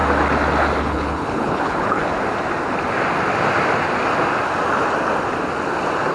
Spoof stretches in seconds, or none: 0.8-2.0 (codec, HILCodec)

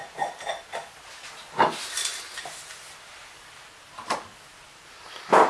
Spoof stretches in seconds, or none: none

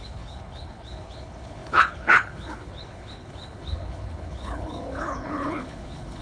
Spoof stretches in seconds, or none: 0.0-6.2 (codec, HILCodec)

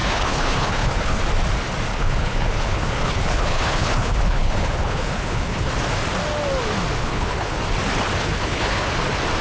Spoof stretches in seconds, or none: 0.0-1.2 (codec, HILCodec); 1.9-5.7; 7.0-7.6; 8.2-8.9

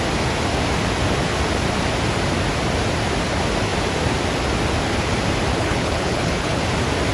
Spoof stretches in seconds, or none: 5.5-6.6 (codec, HILCodec)

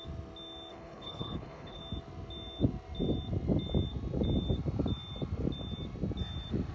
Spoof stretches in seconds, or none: 0.7-1.8 (codec, HILCodec)

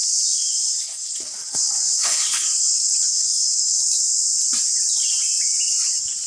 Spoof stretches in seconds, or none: 0.8-3.8 (codec, HILCodec)